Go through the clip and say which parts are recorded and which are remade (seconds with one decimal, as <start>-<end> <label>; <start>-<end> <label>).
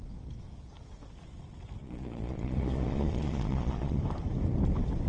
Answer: 0.0-1.8 recorded; 1.8-4.0 remade; 4.0-5.1 recorded